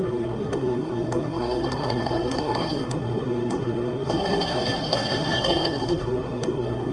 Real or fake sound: fake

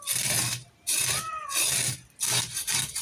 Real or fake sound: real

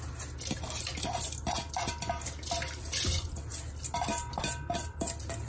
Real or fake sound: real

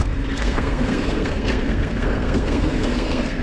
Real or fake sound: fake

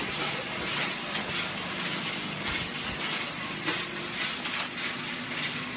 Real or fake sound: real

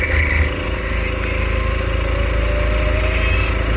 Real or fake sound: real